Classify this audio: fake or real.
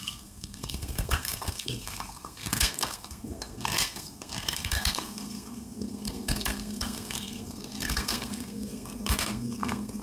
fake